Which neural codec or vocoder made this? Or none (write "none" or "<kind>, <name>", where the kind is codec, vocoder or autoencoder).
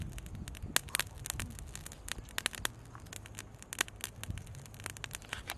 none